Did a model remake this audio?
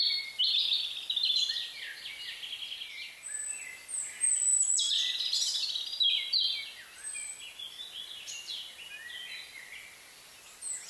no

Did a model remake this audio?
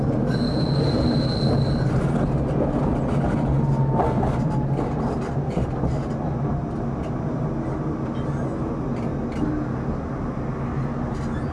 no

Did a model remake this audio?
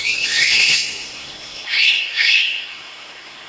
yes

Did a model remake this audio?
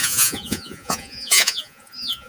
yes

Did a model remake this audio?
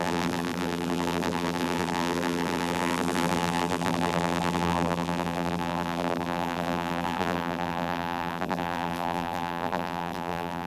yes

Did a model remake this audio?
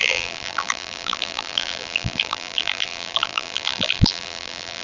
yes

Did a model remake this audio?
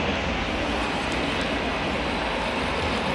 no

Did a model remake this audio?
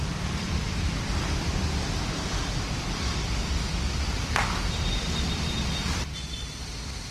yes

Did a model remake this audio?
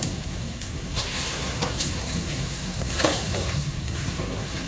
yes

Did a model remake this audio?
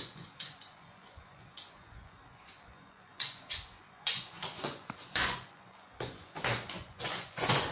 yes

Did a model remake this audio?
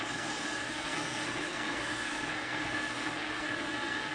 yes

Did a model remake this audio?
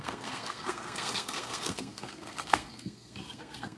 yes